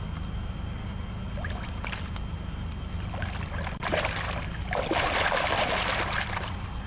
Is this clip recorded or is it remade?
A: recorded